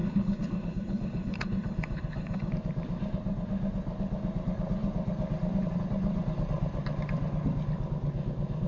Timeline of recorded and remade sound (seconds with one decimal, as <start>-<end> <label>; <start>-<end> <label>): 0.0-2.5 remade; 2.5-8.7 recorded